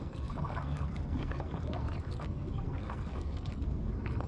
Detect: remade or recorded remade